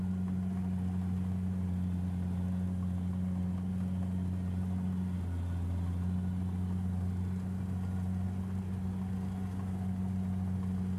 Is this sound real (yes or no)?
yes